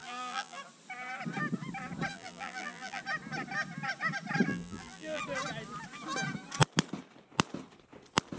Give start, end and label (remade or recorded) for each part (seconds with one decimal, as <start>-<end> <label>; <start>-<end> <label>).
0.0-0.6 remade; 0.6-2.1 recorded; 2.1-3.0 remade; 3.0-4.5 recorded; 4.5-5.2 remade; 5.2-8.4 recorded